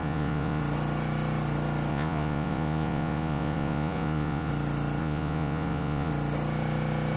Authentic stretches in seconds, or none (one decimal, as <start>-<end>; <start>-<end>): 0.6-1.9; 4.5-5.0; 6.1-7.2